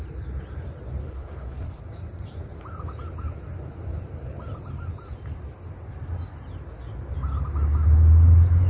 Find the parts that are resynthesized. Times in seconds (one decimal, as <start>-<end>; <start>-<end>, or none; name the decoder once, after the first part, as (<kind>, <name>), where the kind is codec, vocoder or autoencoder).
1.0-1.8 (codec, HILCodec)